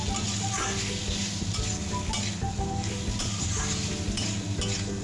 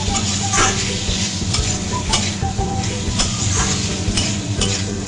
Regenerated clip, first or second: second